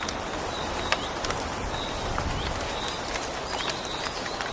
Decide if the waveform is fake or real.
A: real